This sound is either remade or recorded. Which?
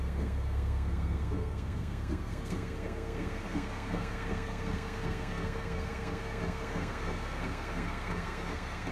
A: remade